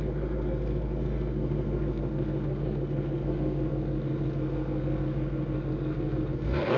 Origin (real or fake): fake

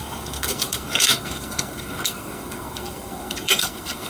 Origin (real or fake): fake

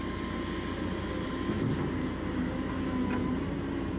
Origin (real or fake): real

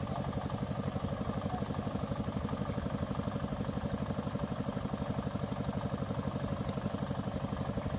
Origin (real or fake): real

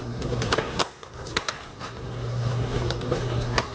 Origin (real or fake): fake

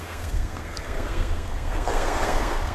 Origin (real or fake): fake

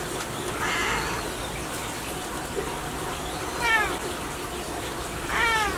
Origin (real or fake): real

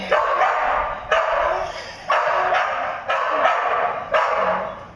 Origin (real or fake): real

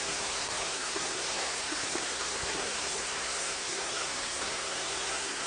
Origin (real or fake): fake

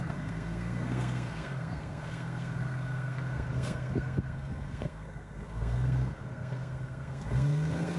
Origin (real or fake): fake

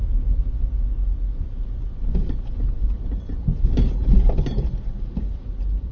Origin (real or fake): real